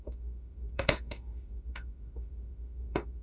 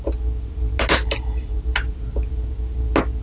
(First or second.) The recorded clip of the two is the second